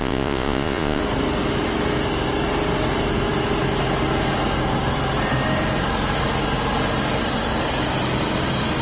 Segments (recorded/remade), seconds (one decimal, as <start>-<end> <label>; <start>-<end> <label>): 0.0-1.0 remade; 1.0-8.8 recorded